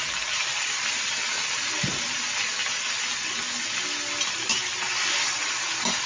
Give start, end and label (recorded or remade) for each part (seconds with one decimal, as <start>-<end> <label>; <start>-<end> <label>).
0.0-6.1 recorded

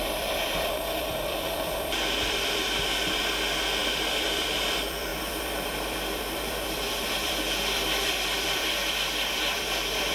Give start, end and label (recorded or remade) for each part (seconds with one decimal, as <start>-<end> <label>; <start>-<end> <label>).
0.0-10.1 remade

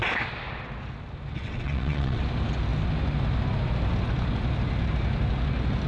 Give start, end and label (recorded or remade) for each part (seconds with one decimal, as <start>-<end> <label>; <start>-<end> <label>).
0.0-1.3 recorded; 1.3-2.2 remade; 2.2-5.9 recorded